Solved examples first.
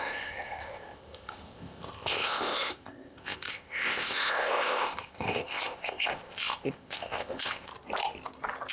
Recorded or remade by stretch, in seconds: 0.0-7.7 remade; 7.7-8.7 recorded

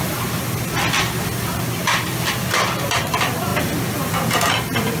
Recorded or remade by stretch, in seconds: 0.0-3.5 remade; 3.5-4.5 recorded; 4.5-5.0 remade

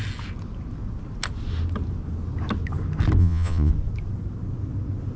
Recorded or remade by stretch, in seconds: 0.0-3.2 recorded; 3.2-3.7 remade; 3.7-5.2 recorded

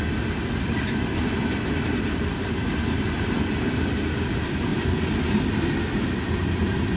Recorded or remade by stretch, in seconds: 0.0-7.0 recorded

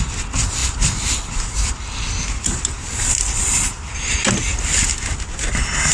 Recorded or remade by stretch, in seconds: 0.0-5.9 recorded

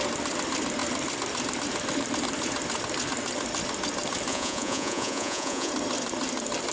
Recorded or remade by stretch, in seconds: 0.0-4.3 recorded; 4.3-5.7 remade; 5.7-6.7 recorded

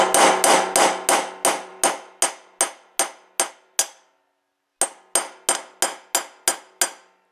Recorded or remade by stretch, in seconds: 0.0-7.3 recorded

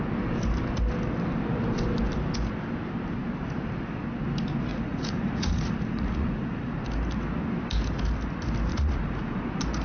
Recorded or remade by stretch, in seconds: 0.0-4.7 recorded; 4.7-6.8 remade; 6.8-8.7 recorded; 8.7-9.4 remade; 9.4-9.8 recorded